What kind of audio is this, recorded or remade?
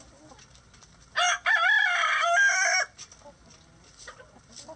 recorded